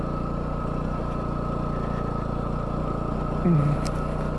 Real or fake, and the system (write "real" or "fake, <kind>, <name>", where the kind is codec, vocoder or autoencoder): real